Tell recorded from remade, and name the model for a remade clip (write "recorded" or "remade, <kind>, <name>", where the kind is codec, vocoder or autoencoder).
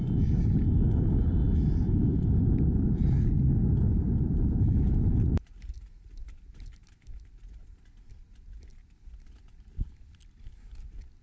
recorded